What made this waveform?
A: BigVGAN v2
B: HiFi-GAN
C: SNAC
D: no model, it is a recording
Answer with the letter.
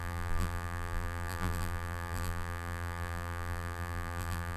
A